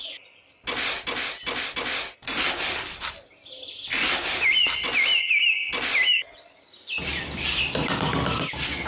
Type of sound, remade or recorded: recorded